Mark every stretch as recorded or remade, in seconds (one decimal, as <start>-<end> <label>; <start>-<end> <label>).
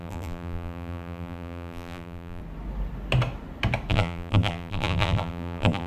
0.0-2.4 remade; 2.4-3.9 recorded; 3.9-5.9 remade